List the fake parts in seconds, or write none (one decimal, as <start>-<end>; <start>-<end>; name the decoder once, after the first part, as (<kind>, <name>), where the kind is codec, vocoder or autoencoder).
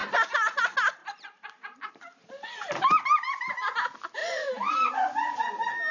0.0-0.6 (vocoder, BigVGAN v2); 1.0-1.9; 4.2-4.9